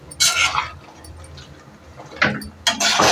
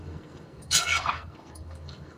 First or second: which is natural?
first